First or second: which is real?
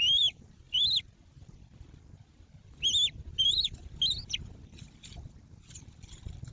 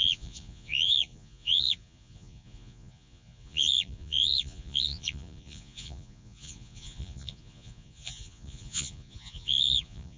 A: first